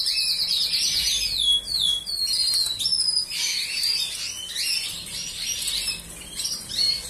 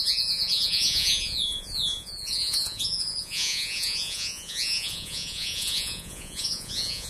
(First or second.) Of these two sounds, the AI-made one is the second